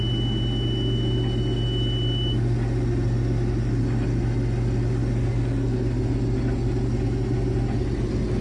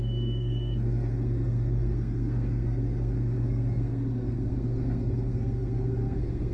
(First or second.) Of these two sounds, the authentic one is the first